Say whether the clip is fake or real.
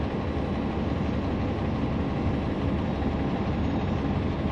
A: real